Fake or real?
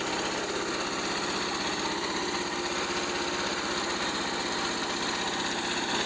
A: real